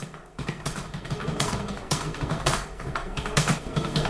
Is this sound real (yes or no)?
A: no